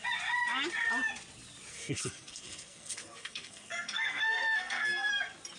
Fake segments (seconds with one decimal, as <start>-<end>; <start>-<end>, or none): 1.7-5.1